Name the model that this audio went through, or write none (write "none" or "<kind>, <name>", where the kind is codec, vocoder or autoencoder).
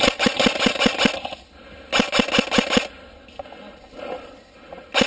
none